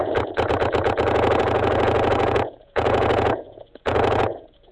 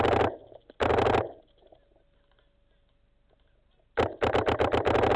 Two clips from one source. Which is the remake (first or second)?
first